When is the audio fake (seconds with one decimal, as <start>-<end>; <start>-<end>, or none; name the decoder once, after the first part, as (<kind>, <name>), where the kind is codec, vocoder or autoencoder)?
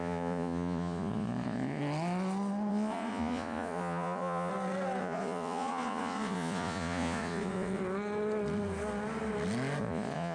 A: 0.0-1.8 (vocoder, Vocos); 2.7-4.5; 5.0-7.8; 9.8-10.3